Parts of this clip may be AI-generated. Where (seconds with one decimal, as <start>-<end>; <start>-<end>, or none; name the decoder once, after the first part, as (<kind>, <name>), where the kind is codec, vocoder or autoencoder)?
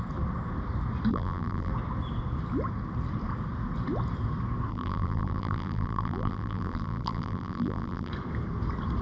1.1-1.7 (vocoder, BigVGAN v2); 4.7-8.1